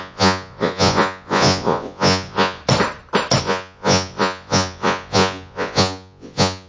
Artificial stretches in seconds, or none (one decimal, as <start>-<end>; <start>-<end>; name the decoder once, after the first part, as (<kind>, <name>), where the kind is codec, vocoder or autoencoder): 0.0-2.6 (vocoder, Vocos); 3.4-6.7